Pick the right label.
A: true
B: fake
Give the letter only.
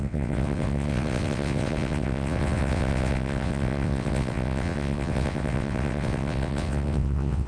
B